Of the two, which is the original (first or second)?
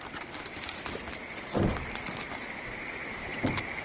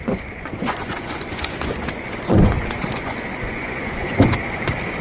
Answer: first